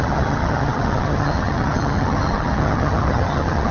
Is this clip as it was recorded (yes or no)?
no